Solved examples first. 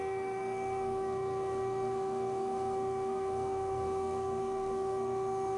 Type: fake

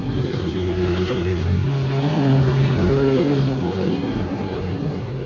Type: fake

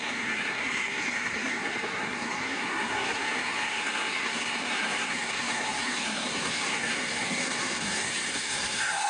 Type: fake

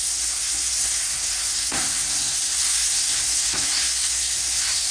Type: fake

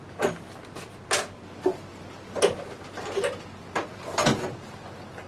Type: real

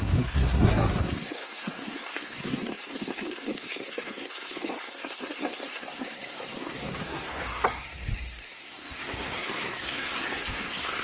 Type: fake